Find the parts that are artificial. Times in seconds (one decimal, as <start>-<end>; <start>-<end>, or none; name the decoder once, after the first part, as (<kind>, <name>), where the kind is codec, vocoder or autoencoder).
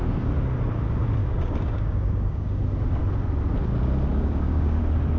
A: 1.2-2.6 (codec, DAC); 4.1-4.8